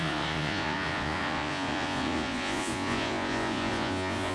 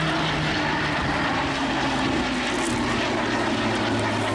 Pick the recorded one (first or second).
second